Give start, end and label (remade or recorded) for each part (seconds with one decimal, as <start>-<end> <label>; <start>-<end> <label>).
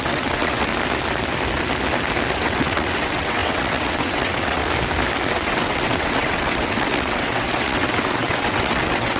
0.0-0.7 remade; 0.7-2.3 recorded; 2.3-4.6 remade; 4.6-5.3 recorded; 5.3-9.2 remade